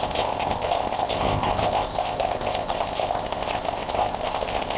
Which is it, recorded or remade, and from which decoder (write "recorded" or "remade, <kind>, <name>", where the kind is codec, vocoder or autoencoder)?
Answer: remade, codec, ZipCodec